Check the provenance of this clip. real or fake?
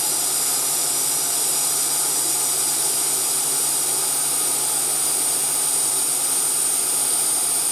real